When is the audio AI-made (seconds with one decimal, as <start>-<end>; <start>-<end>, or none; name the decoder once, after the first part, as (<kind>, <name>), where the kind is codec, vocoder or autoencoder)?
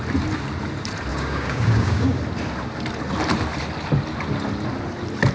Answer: 1.1-2.2 (codec, DAC)